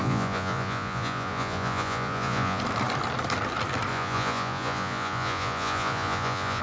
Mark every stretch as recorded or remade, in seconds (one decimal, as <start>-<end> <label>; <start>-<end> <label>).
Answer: 0.0-2.6 remade; 2.6-3.9 recorded; 3.9-6.6 remade

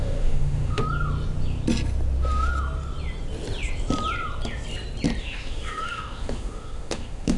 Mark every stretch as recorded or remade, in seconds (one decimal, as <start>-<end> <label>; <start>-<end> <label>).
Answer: 0.0-0.8 remade; 0.8-5.2 recorded; 5.2-7.4 remade

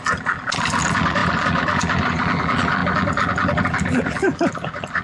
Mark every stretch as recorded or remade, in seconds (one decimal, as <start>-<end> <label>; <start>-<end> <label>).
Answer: 0.0-5.0 remade

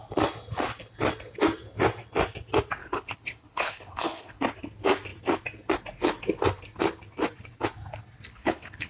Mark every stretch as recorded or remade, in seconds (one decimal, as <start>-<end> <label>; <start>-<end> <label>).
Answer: 0.0-2.8 recorded; 2.8-4.4 remade; 4.4-8.3 recorded; 8.3-8.9 remade

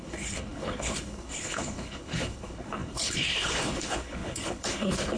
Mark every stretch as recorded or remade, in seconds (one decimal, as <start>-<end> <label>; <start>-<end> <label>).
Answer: 0.0-5.2 remade